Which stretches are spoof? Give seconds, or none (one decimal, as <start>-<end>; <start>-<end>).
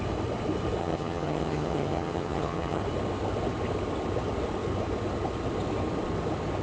0.8-2.8